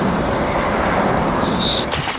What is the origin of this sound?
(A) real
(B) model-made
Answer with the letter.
B